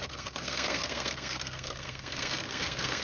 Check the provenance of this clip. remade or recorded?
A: remade